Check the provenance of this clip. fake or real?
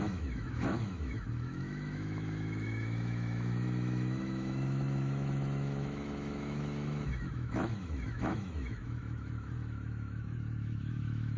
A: fake